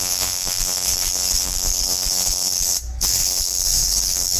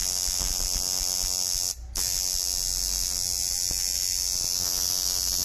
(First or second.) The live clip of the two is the second